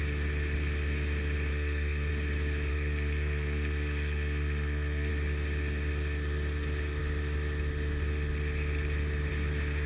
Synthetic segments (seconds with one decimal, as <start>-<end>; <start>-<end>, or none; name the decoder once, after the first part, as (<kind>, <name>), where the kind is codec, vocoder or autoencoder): 1.5-2.1 (codec, SNAC); 2.7-5.1